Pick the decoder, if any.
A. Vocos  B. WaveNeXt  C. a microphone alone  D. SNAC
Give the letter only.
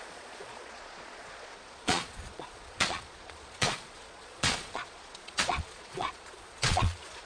A